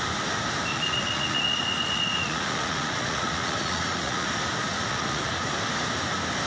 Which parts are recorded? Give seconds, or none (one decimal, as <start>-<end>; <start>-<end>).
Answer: 0.0-0.7; 4.3-4.7; 5.5-6.5